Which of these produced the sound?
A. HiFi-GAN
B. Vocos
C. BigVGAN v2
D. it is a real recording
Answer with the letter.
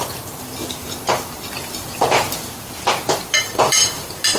C